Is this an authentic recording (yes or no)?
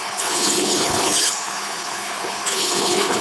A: no